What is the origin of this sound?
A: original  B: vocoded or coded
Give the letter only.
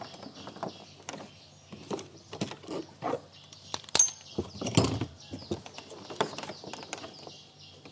A